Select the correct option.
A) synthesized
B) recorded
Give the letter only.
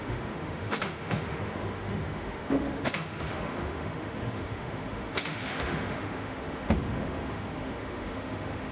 A